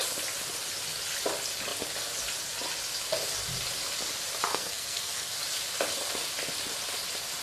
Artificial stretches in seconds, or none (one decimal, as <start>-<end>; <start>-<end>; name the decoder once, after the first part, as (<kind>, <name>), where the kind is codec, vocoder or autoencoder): 4.5-5.4 (codec, SNAC)